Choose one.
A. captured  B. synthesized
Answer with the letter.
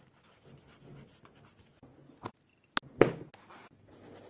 A